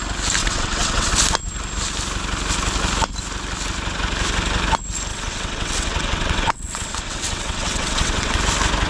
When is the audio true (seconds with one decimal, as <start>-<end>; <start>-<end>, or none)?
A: 0.0-0.4; 1.1-5.1; 8.4-8.9